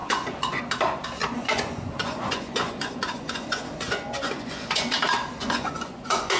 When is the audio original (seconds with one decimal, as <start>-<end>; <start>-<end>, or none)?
0.6-1.2; 4.9-5.4

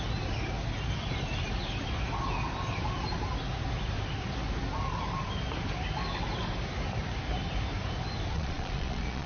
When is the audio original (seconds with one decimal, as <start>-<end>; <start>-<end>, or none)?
0.0-8.3

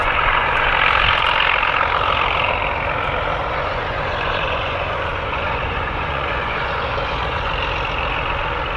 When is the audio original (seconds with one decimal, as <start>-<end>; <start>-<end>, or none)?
0.7-3.4; 7.5-8.8